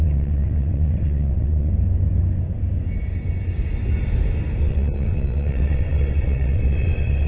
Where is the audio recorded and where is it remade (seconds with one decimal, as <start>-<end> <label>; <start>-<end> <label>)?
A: 0.0-1.7 remade; 1.7-4.6 recorded; 4.6-7.3 remade